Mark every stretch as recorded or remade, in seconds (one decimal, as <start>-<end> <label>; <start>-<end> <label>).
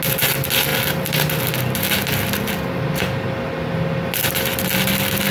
0.0-5.3 recorded